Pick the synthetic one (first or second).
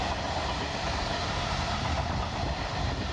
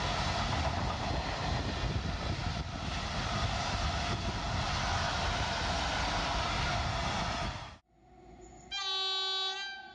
first